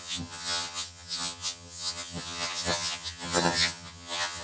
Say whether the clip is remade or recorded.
remade